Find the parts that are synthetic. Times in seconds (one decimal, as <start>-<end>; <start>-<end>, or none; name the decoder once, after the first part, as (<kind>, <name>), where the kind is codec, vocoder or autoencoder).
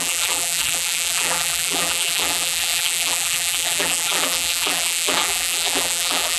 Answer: 0.0-6.4 (vocoder, BigVGAN v2)